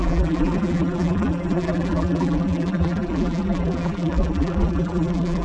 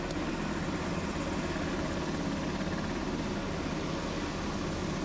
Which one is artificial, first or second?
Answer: first